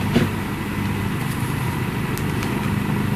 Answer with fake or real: real